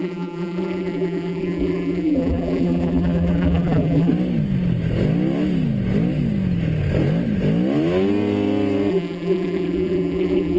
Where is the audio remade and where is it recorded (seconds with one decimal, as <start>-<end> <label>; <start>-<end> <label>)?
0.0-4.1 remade; 4.1-8.9 recorded; 8.9-10.6 remade

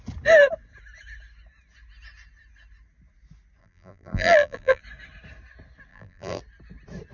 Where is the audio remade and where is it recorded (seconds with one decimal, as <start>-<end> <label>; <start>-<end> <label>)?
0.0-3.6 recorded; 3.6-4.8 remade; 4.8-5.9 recorded; 5.9-6.4 remade; 6.4-7.1 recorded